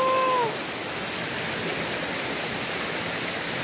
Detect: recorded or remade recorded